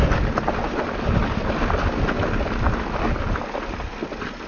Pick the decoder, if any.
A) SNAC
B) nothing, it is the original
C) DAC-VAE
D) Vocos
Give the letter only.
B